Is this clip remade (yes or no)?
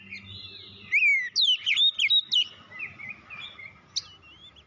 no